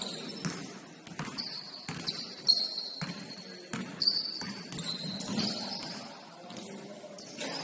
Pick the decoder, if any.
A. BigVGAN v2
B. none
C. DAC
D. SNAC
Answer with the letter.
B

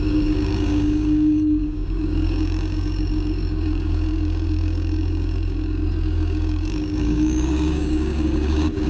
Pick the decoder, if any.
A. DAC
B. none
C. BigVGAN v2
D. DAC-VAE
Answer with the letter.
A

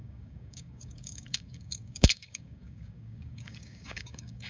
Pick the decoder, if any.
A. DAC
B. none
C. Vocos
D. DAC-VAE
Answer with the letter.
A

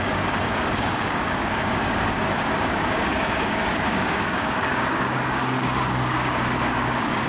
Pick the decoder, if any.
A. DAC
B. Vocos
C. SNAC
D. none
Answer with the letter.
A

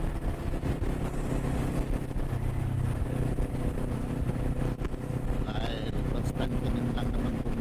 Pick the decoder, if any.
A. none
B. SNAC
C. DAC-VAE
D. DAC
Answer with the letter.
A